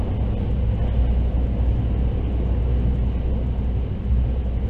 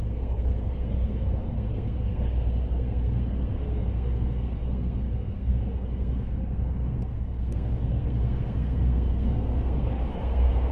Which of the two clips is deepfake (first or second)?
second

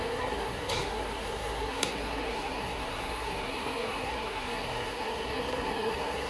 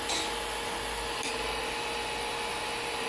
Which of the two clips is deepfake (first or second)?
first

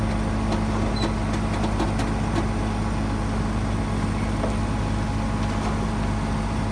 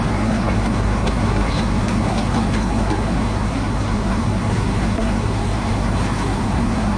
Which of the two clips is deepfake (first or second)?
second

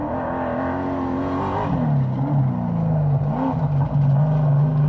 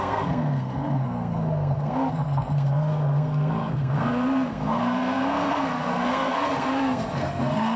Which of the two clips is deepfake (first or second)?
second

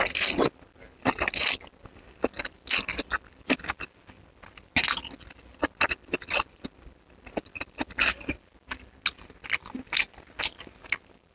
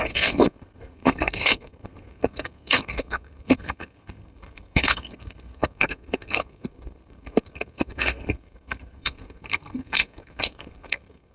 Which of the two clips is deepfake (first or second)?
second